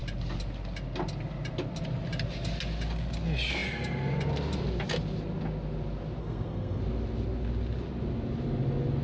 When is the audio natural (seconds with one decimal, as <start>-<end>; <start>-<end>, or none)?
0.0-6.2; 6.8-9.0